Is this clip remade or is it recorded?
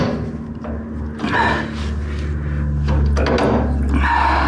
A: recorded